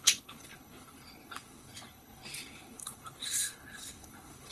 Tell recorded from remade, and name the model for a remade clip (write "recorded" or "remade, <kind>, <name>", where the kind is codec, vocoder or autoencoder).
remade, codec, HILCodec